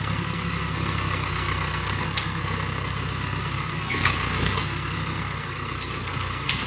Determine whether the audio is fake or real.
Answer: fake